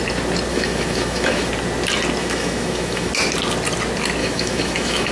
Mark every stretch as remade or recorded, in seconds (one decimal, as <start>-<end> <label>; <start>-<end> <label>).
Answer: 0.0-0.5 recorded; 0.5-1.5 remade; 1.5-2.2 recorded; 2.2-3.1 remade; 3.1-4.2 recorded; 4.2-5.1 remade